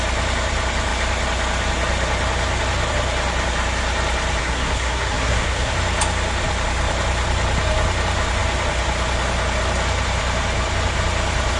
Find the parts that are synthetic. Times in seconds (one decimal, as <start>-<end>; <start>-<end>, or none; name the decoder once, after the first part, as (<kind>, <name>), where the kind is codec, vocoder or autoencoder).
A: 4.4-5.7 (codec, SNAC)